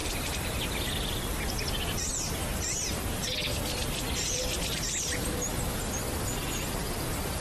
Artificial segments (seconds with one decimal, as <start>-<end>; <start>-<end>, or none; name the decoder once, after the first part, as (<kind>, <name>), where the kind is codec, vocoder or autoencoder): none

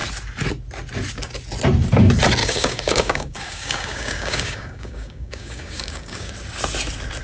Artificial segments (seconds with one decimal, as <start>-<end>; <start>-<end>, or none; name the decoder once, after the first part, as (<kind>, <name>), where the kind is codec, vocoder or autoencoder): 2.4-6.3 (codec, DAC)

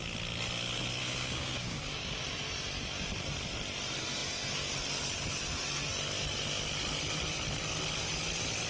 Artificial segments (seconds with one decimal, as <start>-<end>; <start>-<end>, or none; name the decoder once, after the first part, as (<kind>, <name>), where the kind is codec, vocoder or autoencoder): 1.0-2.2 (codec, DAC)

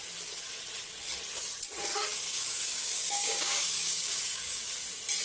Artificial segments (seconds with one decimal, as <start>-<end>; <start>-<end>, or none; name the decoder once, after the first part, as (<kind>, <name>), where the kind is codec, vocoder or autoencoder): 1.9-4.7 (codec, DAC)

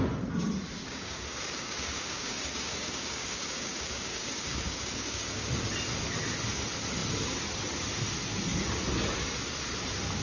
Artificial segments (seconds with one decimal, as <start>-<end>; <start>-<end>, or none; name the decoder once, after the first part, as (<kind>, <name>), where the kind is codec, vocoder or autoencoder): 0.8-5.5 (codec, DAC)

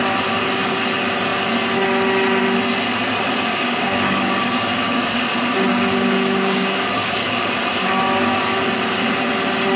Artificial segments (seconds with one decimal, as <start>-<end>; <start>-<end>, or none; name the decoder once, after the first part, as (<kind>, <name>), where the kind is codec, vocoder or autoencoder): 3.5-5.2 (codec, DAC); 5.7-7.5

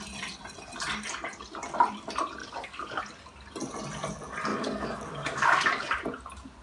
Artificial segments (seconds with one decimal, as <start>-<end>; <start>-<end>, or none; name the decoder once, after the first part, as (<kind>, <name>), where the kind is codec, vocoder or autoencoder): 2.4-3.0 (codec, DAC); 4.5-6.0